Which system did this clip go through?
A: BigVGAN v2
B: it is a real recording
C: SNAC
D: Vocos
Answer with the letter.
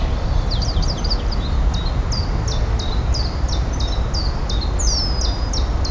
B